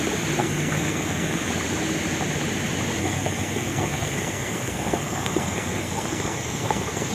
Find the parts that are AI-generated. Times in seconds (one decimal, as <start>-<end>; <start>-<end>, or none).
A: 0.4-1.5; 3.0-7.1